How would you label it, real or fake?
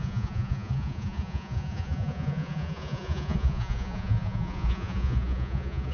fake